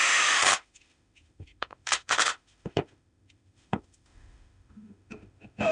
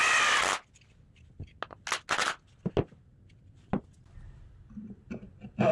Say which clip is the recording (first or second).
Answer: second